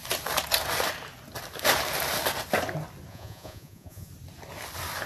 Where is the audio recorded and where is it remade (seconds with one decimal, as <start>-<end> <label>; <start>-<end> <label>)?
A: 0.0-3.1 recorded; 3.1-4.1 remade; 4.1-5.1 recorded